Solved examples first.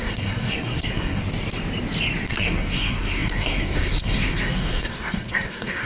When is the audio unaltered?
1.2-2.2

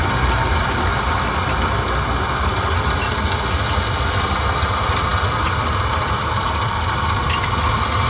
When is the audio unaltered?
0.0-8.1

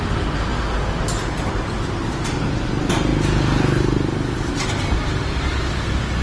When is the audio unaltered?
0.0-6.2

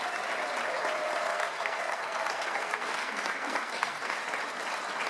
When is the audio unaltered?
0.0-1.3; 4.2-5.1

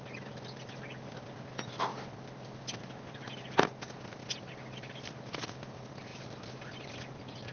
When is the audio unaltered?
0.0-7.5

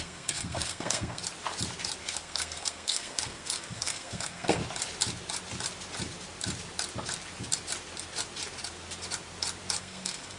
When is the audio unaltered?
1.2-2.0; 4.6-9.8

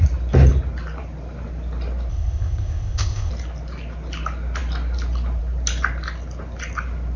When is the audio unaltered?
0.0-2.1; 3.3-7.2